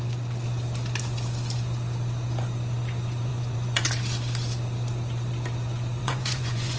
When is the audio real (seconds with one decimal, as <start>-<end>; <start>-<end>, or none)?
0.0-3.3; 3.9-6.0